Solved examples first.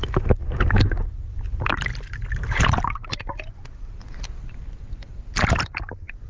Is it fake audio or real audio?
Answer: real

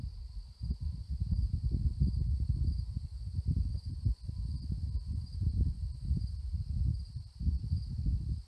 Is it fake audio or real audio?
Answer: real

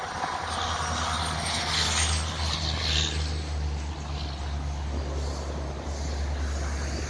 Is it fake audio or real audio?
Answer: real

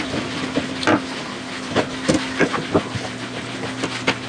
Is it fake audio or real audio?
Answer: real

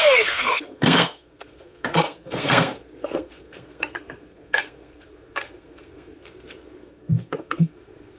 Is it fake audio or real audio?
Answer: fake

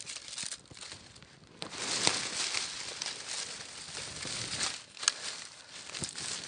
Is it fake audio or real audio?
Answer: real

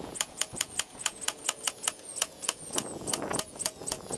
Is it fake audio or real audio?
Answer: fake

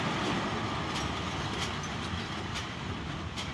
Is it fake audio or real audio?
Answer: real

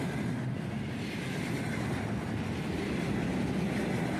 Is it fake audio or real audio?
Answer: real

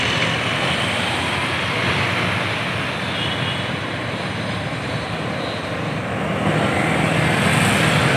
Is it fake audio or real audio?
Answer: real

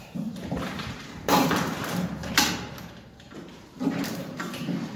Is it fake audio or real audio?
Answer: fake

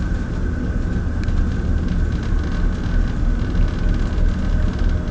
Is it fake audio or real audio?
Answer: real